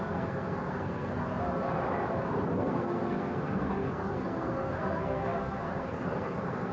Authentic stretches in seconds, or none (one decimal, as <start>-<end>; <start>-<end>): 1.2-2.6